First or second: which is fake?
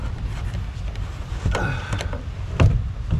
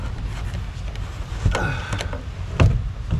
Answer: first